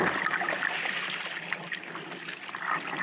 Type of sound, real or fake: real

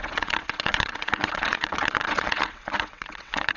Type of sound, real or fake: fake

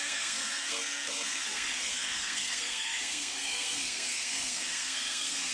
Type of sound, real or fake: fake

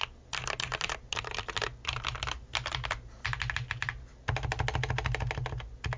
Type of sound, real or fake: real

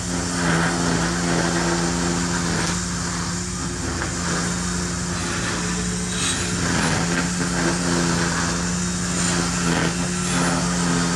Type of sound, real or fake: real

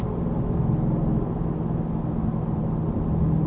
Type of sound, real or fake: real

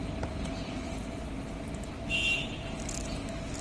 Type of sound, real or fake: real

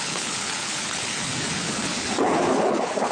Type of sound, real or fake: fake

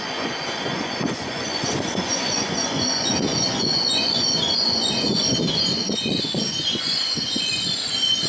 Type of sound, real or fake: fake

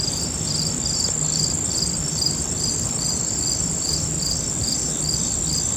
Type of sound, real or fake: fake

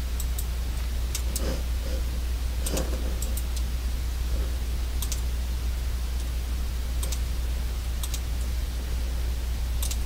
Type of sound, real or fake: real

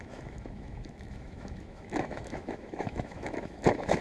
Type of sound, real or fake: fake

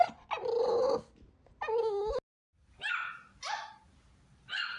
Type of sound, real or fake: real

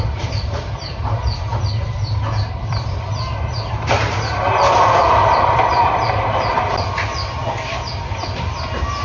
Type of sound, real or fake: fake